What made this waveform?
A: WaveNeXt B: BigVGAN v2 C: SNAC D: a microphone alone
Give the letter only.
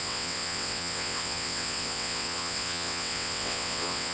A